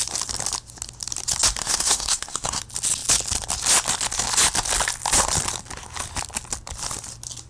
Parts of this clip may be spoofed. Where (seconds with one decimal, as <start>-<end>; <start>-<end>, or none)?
1.6-2.6

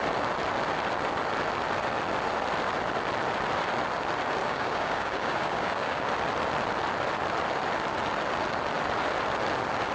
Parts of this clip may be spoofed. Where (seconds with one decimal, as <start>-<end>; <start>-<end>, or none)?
4.4-6.1

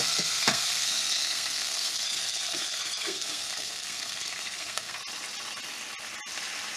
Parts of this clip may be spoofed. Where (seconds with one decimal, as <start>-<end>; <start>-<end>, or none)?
0.0-5.0